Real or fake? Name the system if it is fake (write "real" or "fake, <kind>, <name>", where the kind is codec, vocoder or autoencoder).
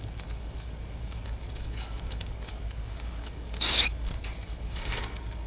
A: fake, codec, DAC